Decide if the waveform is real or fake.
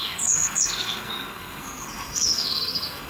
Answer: fake